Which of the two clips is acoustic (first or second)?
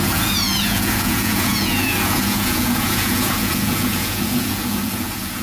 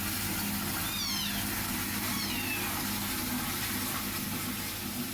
second